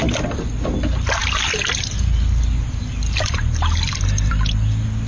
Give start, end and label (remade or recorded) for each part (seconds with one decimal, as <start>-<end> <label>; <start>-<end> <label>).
0.0-5.1 recorded